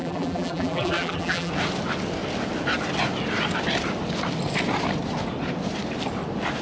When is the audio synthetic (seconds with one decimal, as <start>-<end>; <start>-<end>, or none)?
0.0-1.5